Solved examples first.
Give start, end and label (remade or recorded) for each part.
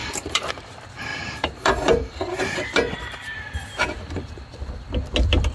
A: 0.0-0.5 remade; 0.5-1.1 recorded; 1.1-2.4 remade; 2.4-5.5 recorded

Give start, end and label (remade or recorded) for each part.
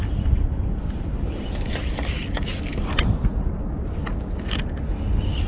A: 0.0-5.5 recorded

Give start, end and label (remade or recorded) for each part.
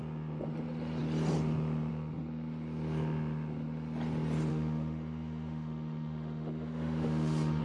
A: 0.0-4.5 recorded; 4.5-7.6 remade